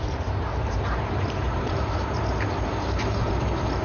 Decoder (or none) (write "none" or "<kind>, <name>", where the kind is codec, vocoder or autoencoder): vocoder, BigVGAN v2